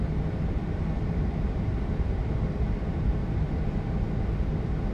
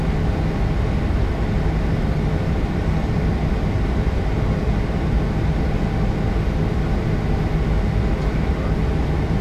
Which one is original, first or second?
second